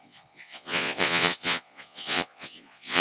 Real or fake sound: fake